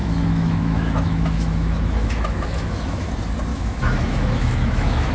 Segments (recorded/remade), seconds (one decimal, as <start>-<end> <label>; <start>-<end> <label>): 0.0-3.1 remade; 3.1-3.5 recorded; 3.5-5.1 remade